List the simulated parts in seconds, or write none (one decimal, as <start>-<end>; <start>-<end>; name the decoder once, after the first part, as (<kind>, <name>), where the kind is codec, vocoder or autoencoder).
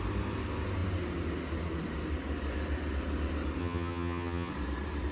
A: 3.6-4.5 (vocoder, HiFi-GAN)